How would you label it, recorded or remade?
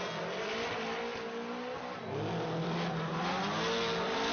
recorded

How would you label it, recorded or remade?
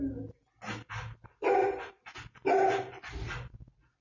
recorded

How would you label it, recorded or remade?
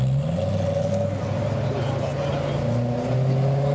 recorded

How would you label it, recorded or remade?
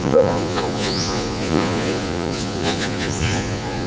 remade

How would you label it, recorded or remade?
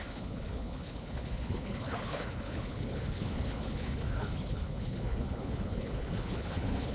remade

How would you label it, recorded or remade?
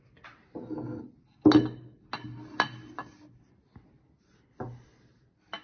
recorded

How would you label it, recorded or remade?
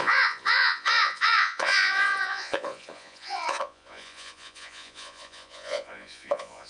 remade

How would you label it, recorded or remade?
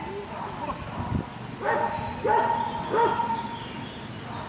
recorded